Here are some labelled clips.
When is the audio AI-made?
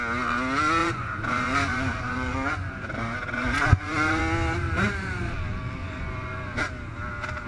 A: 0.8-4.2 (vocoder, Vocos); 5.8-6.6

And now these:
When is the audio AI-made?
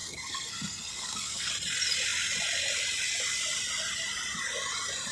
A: 0.0-1.5 (codec, SNAC)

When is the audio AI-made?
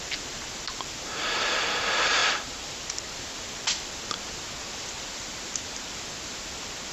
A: none